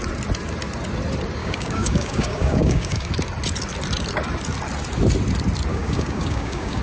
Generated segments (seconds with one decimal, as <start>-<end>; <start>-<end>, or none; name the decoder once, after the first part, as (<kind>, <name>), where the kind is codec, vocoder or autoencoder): 1.4-3.1 (codec, DAC); 5.7-6.8